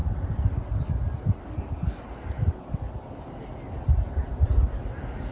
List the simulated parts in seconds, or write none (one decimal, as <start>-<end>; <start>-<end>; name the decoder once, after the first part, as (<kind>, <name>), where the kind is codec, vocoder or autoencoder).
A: none